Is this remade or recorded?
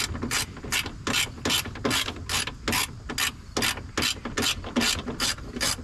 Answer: recorded